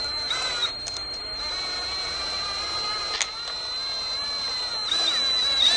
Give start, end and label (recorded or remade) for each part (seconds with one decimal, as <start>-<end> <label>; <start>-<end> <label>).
0.0-5.8 recorded